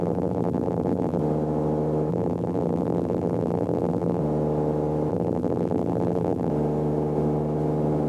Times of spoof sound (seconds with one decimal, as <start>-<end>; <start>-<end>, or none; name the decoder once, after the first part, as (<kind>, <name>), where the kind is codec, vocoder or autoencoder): 0.0-1.2 (vocoder, BigVGAN v2); 2.1-4.2; 5.1-6.5

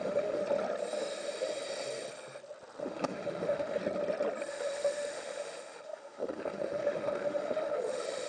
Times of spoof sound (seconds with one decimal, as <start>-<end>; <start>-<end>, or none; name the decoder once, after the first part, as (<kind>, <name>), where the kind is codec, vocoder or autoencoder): 0.0-0.4 (autoencoder, DAC-VAE); 2.8-3.8; 4.5-8.3

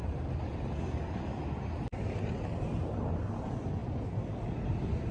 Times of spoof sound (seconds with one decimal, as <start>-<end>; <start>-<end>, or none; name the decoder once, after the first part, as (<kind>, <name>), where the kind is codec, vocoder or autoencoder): none

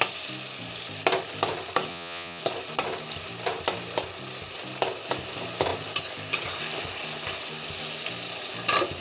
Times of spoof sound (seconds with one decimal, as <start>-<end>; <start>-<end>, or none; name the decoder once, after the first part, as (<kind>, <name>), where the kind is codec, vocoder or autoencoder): 1.9-2.4 (vocoder, Vocos)

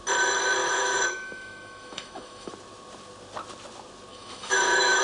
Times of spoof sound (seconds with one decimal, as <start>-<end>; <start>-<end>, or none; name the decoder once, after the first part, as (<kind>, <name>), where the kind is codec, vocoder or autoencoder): 0.6-2.5 (autoencoder, DAC-VAE); 4.1-5.0

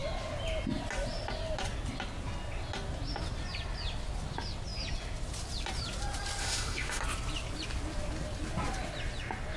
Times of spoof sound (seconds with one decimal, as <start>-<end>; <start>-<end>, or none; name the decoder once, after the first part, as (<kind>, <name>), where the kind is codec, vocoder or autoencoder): 6.4-7.0 (autoencoder, DAC-VAE)